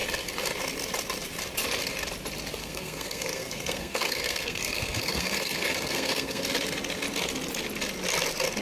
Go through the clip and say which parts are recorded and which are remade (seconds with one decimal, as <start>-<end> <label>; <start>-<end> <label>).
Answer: 0.0-2.6 recorded; 2.6-6.4 remade; 6.4-8.6 recorded